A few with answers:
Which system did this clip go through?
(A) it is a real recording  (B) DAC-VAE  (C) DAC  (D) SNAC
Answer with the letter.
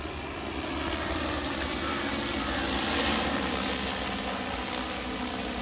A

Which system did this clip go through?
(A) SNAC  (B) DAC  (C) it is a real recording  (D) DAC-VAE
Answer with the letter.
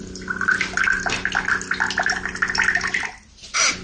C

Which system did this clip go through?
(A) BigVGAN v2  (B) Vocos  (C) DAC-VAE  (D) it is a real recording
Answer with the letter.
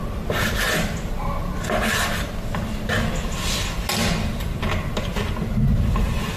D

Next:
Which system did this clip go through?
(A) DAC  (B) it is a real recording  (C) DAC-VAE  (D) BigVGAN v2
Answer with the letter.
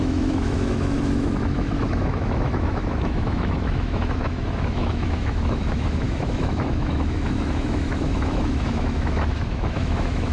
C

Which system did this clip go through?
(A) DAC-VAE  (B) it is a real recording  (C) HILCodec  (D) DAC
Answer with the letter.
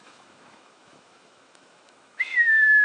A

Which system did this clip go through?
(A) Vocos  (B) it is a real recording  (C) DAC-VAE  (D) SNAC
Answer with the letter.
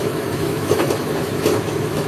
C